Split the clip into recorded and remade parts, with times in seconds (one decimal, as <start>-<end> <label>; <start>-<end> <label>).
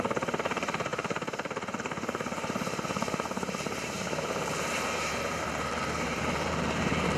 0.0-7.2 remade